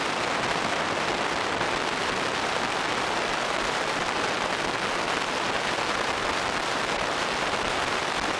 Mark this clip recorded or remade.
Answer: recorded